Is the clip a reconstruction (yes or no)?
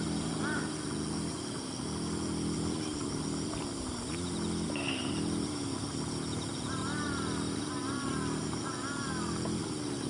no